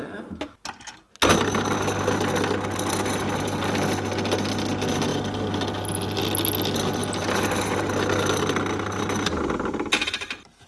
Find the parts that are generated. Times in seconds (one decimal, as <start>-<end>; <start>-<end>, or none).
none